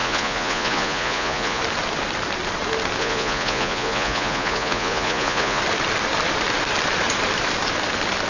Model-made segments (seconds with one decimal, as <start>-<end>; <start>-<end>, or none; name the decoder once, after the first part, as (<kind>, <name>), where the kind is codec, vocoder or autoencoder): 0.0-1.6 (vocoder, Vocos); 3.0-5.6